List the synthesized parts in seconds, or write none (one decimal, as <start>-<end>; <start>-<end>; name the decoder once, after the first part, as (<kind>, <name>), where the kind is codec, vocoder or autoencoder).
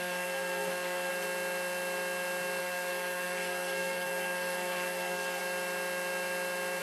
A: 0.0-1.1 (codec, SNAC); 2.6-5.4